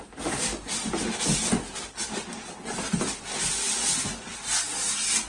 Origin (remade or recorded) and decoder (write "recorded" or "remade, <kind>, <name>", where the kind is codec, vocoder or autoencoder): recorded